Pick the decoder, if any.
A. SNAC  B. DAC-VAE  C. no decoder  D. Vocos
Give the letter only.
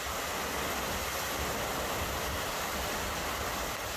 C